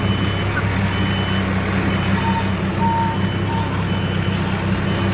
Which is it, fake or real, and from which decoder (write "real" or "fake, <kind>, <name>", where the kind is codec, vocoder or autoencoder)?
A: real